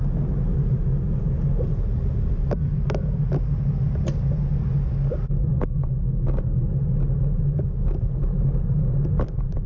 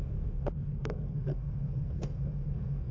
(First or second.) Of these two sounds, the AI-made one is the second